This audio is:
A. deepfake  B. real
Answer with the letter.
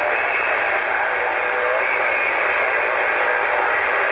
B